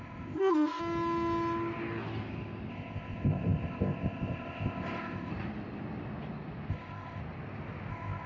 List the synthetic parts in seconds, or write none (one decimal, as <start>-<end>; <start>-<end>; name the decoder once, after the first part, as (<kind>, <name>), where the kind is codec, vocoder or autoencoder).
0.0-0.8 (codec, ZipCodec); 2.7-5.3; 6.7-7.2; 7.9-8.3